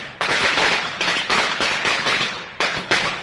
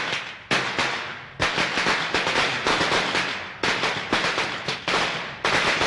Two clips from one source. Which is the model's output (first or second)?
first